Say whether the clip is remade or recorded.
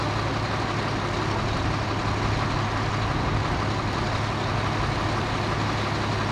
recorded